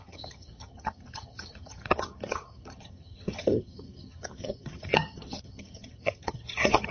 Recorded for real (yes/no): no